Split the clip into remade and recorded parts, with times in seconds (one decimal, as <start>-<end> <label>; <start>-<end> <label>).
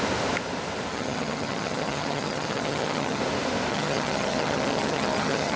0.0-0.9 recorded; 0.9-3.2 remade; 3.2-3.7 recorded; 3.7-5.6 remade